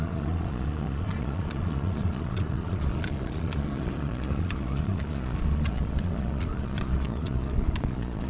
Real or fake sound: fake